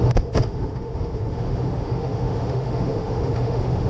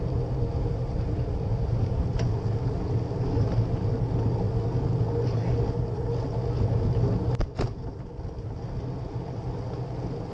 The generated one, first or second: first